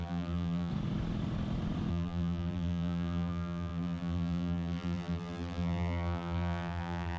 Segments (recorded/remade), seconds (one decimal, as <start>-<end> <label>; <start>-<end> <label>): 0.0-0.7 remade; 0.7-1.9 recorded; 1.9-7.2 remade